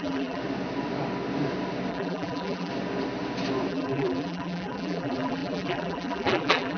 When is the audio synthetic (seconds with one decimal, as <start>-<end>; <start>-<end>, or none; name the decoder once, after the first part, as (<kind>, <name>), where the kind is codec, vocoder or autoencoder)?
0.0-0.4 (vocoder, BigVGAN v2); 1.9-2.7; 3.7-6.8